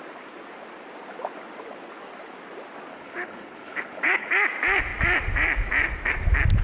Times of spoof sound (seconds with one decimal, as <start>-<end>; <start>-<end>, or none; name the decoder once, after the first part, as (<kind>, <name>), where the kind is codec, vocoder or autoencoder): 2.9-4.3 (codec, HILCodec)